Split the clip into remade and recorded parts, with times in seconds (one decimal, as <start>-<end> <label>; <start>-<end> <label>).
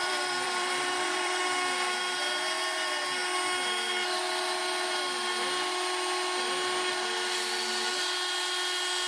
0.0-1.4 remade; 1.4-9.1 recorded